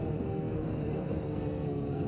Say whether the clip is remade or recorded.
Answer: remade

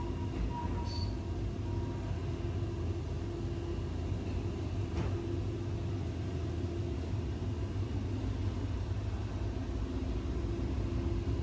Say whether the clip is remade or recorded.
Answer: recorded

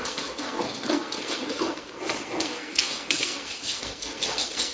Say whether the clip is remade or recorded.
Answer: remade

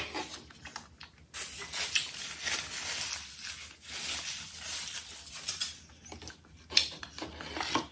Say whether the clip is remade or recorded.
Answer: recorded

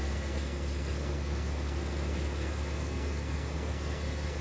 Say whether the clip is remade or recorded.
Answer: remade